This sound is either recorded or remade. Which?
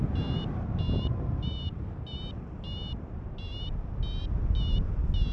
recorded